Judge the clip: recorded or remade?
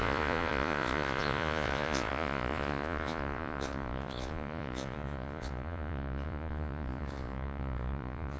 remade